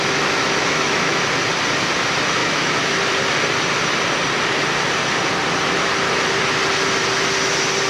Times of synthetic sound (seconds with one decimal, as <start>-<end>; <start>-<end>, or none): 0.6-1.2; 2.4-3.0